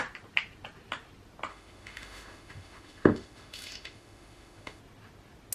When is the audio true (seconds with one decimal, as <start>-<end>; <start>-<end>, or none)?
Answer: 0.0-1.5; 4.8-5.5